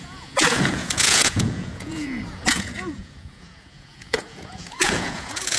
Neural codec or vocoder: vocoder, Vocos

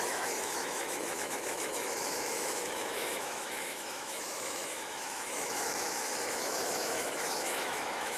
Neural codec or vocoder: autoencoder, DAC-VAE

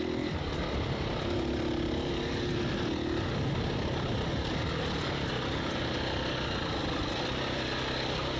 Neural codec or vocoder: none